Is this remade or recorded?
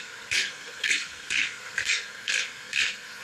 remade